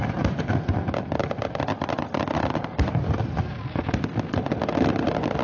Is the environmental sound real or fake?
real